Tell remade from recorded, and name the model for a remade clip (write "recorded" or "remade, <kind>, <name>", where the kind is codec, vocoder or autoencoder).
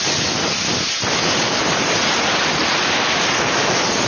recorded